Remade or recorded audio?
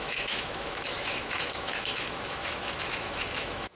remade